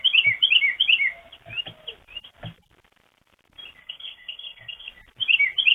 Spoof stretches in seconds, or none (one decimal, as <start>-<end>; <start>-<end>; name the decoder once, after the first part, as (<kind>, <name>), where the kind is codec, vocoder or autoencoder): 3.8-4.9 (codec, SNAC)